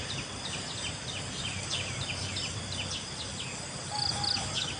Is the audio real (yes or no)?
yes